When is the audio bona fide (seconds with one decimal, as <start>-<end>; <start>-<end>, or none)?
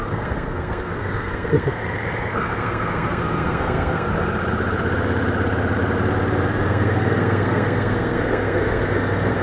1.8-2.3; 4.1-6.7